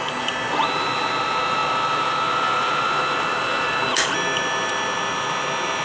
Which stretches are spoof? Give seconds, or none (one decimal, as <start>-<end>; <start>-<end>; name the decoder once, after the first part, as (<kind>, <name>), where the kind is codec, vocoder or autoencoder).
none